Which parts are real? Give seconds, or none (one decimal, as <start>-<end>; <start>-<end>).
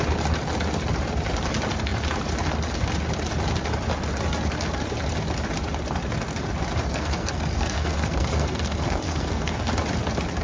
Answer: 0.0-6.9; 9.7-10.4